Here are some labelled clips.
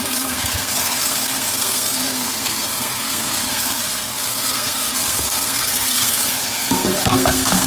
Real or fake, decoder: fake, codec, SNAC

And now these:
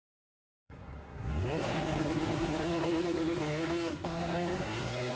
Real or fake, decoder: fake, codec, SNAC